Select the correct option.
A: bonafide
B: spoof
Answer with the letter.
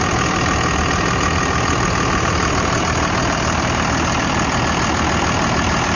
A